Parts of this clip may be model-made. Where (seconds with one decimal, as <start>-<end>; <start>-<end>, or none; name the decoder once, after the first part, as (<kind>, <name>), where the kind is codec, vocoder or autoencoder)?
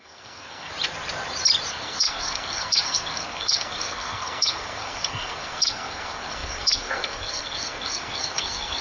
0.0-0.7 (codec, SNAC); 1.7-8.8